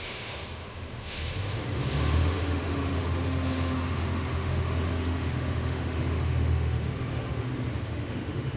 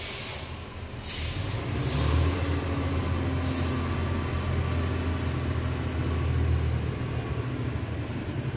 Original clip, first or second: second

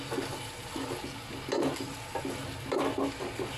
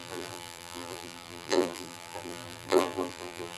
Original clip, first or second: first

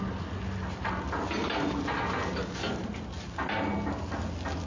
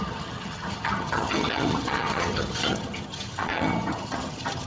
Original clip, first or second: first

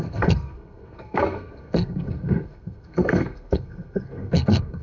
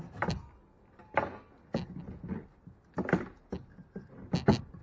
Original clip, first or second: second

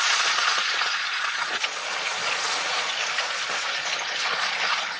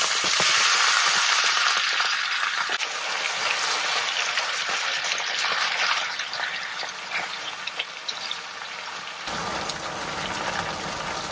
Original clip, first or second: second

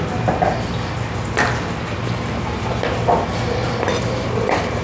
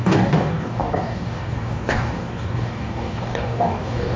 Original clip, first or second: first